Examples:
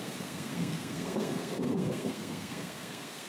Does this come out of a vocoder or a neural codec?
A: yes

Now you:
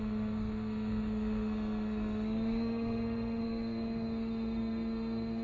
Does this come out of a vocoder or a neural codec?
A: yes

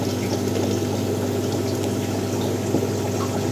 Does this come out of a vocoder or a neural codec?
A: no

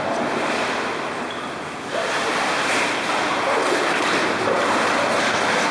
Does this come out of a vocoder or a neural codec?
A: no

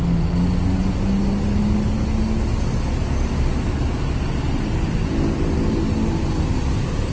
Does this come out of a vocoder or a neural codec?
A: no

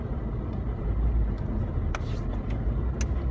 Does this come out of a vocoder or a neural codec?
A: no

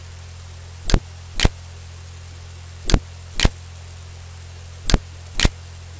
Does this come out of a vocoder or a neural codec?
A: no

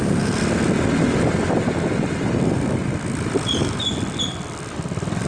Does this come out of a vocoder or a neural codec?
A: no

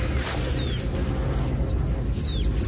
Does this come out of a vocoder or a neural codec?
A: no